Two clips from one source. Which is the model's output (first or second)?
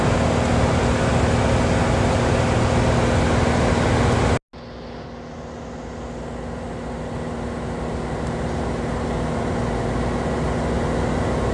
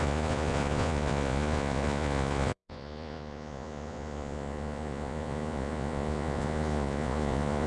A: second